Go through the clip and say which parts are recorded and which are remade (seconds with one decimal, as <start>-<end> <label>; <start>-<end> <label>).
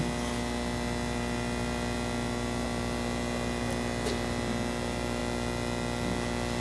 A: 0.0-6.6 recorded